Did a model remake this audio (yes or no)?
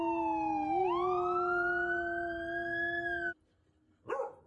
no